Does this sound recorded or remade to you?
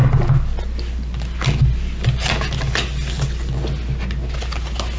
recorded